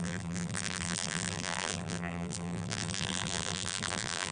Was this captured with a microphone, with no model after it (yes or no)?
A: no